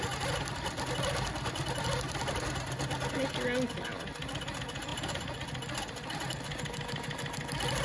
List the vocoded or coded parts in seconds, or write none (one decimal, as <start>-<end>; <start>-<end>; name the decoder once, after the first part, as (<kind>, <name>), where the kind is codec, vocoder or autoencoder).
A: none